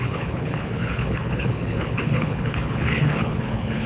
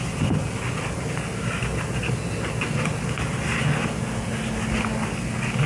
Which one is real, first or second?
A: second